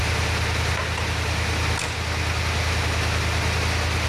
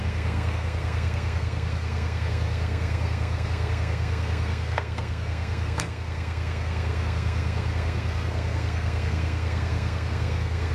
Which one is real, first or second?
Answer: first